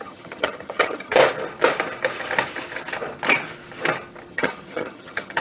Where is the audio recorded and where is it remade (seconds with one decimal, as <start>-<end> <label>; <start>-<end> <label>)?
0.0-1.2 remade; 1.2-4.3 recorded; 4.3-5.4 remade